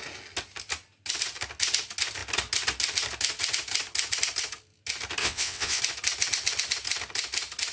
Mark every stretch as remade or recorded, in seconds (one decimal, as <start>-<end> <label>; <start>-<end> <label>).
0.0-5.2 recorded; 5.2-5.8 remade; 5.8-7.7 recorded